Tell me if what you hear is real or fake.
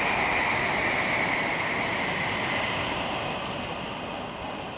real